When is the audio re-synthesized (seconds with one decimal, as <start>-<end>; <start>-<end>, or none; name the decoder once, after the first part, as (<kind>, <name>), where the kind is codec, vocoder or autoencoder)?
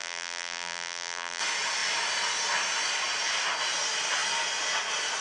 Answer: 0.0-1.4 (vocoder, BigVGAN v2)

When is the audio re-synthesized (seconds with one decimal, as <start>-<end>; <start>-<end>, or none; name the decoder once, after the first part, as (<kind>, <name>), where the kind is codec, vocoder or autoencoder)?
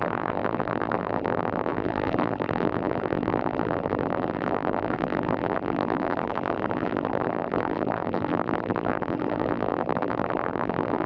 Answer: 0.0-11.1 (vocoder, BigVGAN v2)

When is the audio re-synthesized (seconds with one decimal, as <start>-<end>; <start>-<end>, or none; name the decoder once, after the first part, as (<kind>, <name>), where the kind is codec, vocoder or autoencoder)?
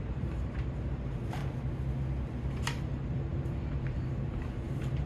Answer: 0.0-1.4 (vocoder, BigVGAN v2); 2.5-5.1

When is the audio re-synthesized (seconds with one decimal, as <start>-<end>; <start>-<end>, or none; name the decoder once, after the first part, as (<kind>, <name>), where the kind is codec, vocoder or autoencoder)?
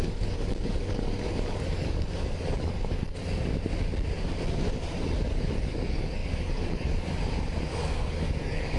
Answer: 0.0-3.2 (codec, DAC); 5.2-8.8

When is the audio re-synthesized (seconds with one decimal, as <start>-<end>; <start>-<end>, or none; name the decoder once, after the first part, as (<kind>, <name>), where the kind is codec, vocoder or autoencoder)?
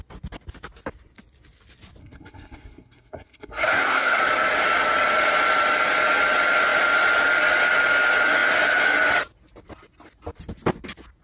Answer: 2.0-4.2 (codec, SNAC)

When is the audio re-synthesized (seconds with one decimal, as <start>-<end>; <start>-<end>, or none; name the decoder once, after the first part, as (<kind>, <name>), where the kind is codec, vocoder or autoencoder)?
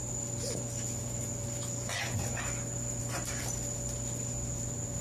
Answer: none